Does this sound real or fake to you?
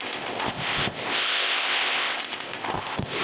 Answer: fake